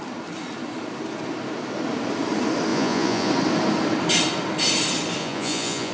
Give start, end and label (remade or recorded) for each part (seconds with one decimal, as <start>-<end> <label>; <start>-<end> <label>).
0.0-2.7 recorded; 2.7-3.3 remade; 3.3-5.2 recorded; 5.2-5.9 remade